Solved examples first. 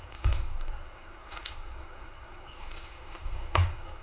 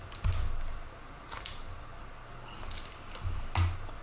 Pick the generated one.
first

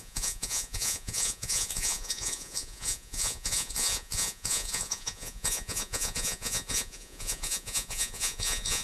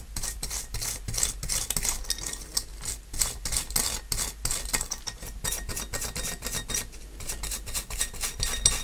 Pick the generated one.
first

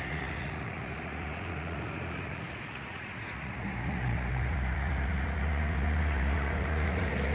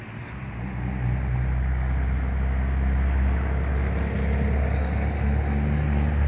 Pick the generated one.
first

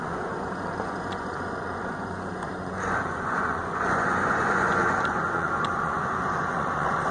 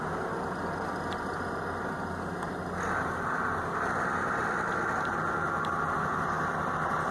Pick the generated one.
first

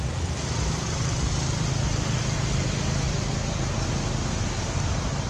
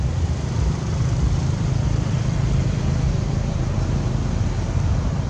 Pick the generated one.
second